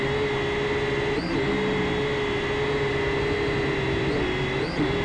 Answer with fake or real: real